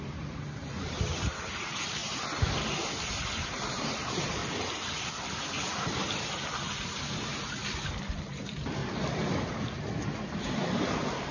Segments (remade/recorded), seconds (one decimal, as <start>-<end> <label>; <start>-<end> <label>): 0.0-2.0 remade; 2.0-3.4 recorded; 3.4-4.4 remade; 4.4-6.8 recorded; 6.8-7.3 remade; 7.3-8.1 recorded; 8.1-8.8 remade; 8.8-10.9 recorded; 10.9-11.3 remade